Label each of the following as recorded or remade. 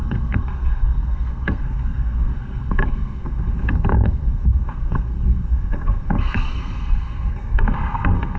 remade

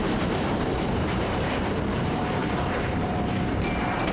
remade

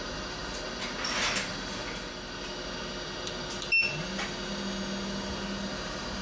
recorded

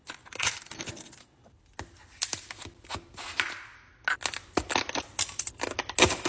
recorded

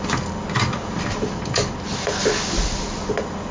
recorded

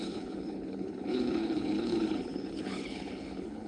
remade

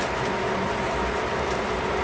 recorded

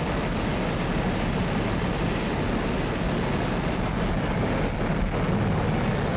recorded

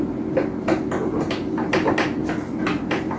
recorded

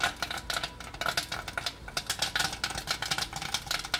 recorded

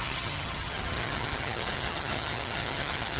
remade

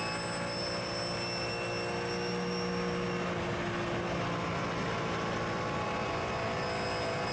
recorded